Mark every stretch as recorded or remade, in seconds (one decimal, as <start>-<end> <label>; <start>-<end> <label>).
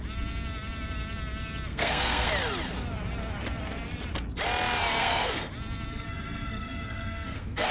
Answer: 0.0-1.7 recorded; 1.7-2.3 remade; 2.3-5.0 recorded; 5.0-5.5 remade; 5.5-5.9 recorded; 5.9-7.7 remade